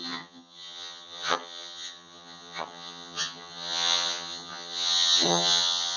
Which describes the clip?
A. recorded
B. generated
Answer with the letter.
B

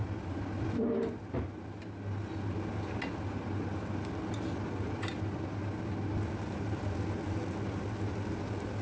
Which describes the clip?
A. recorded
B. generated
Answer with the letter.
A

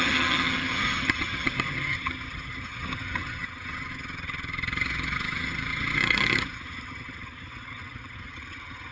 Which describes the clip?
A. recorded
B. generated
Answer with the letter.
B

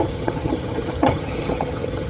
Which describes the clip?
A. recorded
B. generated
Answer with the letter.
B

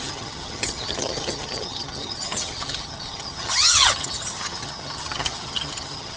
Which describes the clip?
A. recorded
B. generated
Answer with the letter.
B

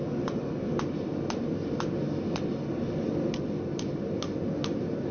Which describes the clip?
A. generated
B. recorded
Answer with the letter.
B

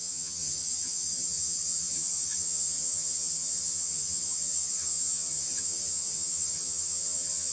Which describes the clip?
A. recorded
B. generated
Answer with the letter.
B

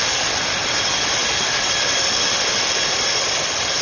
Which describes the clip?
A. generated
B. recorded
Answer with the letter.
B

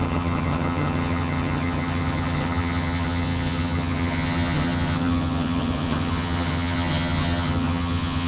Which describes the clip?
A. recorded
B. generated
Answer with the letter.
B